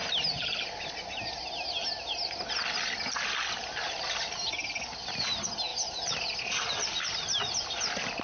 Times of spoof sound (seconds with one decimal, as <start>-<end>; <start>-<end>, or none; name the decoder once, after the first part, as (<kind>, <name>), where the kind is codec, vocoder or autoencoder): 5.7-7.0 (vocoder, BigVGAN v2)